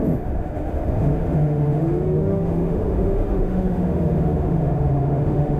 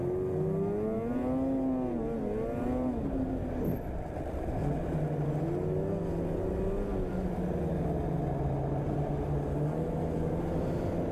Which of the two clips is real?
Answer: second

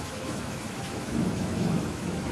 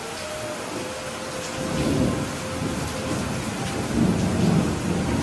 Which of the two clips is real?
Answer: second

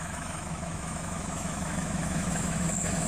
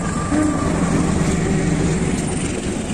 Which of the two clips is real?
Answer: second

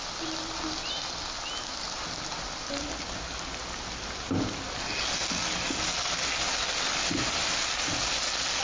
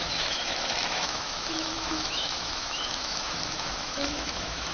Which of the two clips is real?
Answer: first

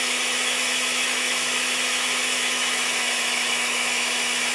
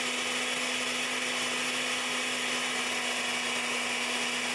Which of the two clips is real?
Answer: second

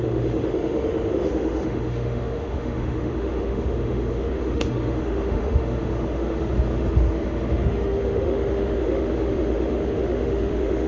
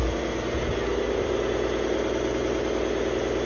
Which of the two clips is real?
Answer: second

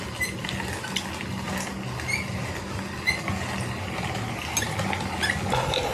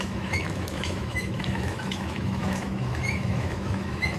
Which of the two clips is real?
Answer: first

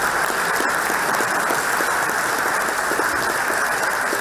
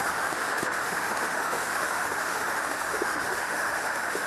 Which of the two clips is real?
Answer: first